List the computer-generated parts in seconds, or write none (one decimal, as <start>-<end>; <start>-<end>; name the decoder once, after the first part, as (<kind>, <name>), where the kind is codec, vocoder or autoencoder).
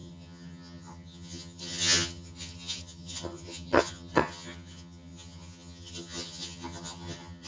0.0-7.5 (vocoder, HiFi-GAN)